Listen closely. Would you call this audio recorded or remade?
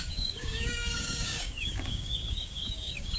remade